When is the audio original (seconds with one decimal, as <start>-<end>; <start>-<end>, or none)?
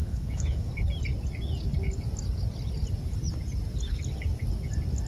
0.7-5.1